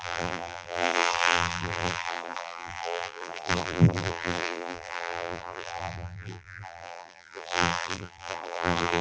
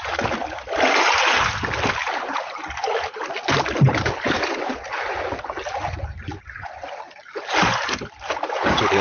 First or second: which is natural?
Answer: second